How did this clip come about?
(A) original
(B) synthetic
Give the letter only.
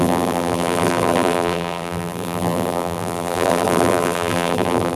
B